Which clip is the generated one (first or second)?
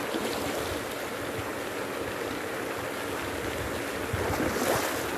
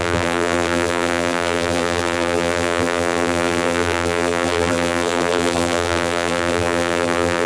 second